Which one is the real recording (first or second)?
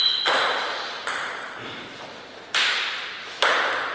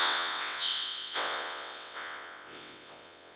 first